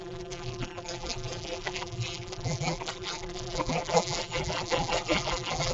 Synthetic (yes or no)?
yes